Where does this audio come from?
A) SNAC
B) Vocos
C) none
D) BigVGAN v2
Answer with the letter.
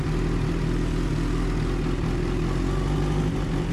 C